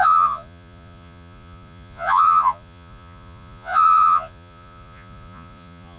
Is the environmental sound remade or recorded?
remade